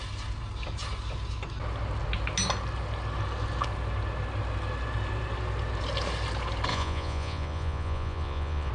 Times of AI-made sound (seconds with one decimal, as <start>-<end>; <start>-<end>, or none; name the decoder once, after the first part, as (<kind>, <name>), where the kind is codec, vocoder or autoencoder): 6.7-8.7 (vocoder, Vocos)

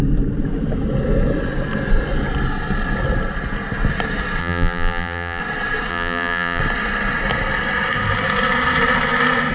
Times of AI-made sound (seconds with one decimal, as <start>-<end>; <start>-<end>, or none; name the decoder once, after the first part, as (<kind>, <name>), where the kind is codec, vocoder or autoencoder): 4.4-5.4 (vocoder, BigVGAN v2); 5.9-6.6

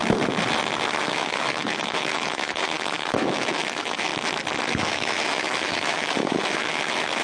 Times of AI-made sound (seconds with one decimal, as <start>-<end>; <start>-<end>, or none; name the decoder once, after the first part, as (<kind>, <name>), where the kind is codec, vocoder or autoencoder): 1.0-4.1 (autoencoder, DAC-VAE); 4.7-7.2

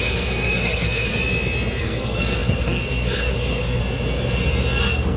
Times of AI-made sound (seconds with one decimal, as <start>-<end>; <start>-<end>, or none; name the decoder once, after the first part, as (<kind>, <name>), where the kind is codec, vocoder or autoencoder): 0.0-1.1 (codec, SNAC); 1.8-3.8; 4.8-5.2